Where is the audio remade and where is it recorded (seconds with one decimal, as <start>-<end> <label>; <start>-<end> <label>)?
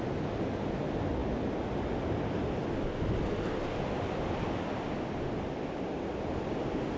0.0-7.0 recorded